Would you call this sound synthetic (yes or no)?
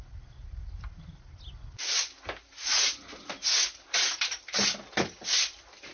no